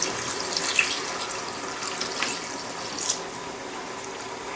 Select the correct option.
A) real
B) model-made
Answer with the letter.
A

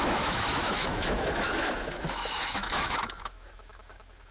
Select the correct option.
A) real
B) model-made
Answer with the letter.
B